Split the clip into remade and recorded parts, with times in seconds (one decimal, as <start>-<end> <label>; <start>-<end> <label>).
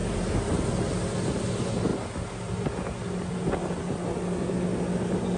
0.0-5.4 recorded